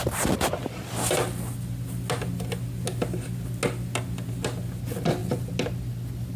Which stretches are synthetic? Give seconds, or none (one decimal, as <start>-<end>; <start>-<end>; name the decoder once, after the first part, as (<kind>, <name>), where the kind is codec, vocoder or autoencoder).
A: none